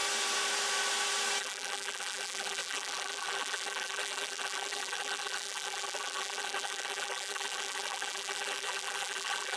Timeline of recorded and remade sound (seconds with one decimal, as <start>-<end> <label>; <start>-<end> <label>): 0.0-1.4 recorded; 1.4-9.6 remade